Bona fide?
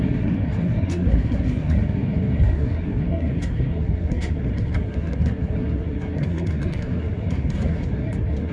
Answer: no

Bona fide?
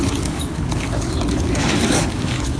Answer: no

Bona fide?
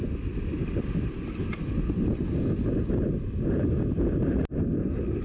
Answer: yes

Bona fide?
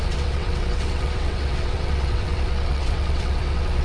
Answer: no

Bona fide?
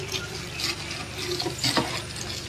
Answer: yes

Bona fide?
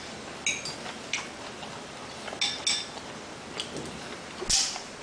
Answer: yes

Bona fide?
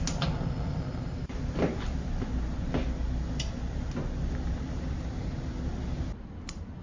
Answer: yes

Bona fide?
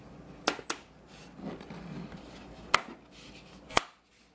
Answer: yes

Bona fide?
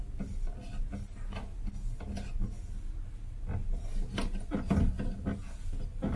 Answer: yes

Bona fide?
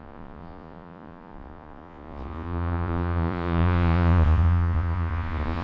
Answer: no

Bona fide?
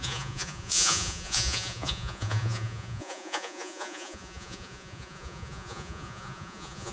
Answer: no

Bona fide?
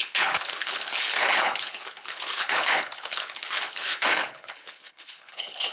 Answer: no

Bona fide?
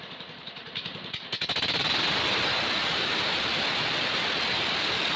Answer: no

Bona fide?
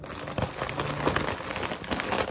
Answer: yes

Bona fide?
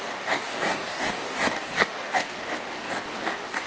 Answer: no